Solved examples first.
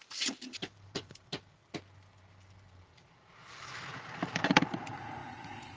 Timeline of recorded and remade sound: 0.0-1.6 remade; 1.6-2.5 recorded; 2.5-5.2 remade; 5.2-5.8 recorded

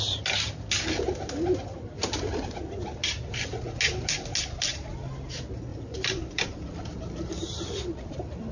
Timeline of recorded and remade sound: 0.0-5.7 recorded; 5.7-8.5 remade

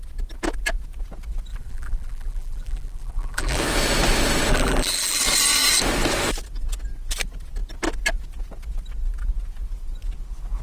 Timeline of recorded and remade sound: 0.0-1.5 recorded; 1.5-3.6 remade; 3.6-4.5 recorded; 4.5-5.2 remade; 5.2-10.6 recorded

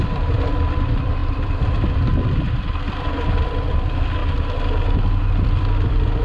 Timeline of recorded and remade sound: 0.0-4.2 remade; 4.2-5.3 recorded; 5.3-6.2 remade

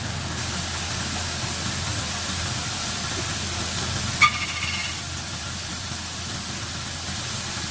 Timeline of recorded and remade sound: 0.0-1.9 recorded; 1.9-3.1 remade; 3.1-4.8 recorded; 4.8-6.0 remade; 6.0-7.7 recorded

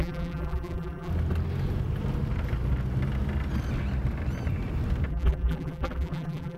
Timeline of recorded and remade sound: 0.0-1.1 remade; 1.1-5.1 recorded; 5.1-6.6 remade

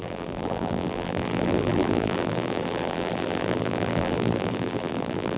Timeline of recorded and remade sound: 0.0-5.4 remade